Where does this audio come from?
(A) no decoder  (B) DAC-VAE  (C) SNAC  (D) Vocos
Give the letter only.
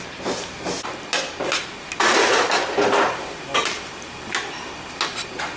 A